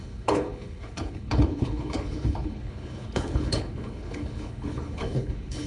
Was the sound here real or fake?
fake